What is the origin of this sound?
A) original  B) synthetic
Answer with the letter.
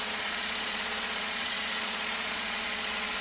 B